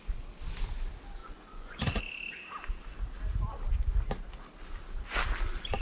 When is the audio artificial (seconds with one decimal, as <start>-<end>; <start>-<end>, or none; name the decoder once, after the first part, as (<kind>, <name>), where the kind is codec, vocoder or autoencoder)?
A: 1.2-2.0 (vocoder, Vocos)